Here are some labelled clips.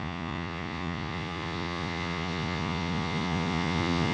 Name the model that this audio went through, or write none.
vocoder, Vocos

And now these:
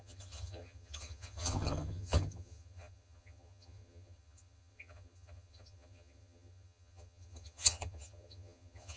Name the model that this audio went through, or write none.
vocoder, HiFi-GAN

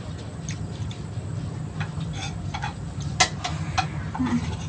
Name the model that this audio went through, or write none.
none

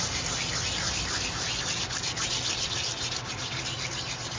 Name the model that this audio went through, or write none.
none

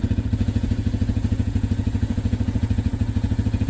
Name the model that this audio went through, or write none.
vocoder, Vocos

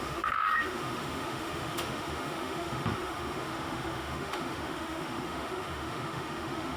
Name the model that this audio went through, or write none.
autoencoder, DAC-VAE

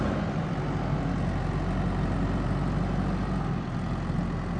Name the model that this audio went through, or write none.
none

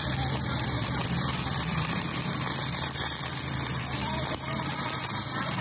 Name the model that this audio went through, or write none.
vocoder, BigVGAN v2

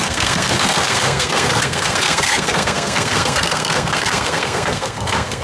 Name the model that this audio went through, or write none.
codec, SNAC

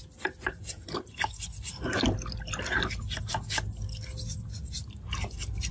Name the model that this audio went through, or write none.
none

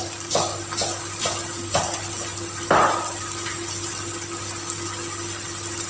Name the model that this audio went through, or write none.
none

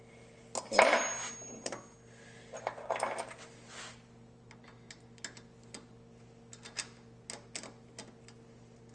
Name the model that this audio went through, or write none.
none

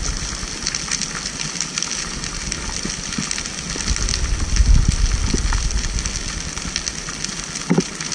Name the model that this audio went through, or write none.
none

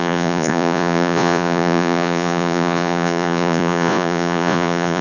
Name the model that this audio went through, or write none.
vocoder, Vocos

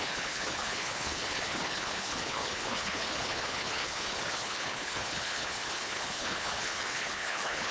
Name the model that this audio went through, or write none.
codec, HILCodec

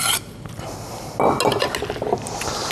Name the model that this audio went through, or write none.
none